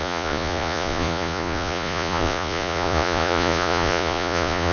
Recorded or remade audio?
remade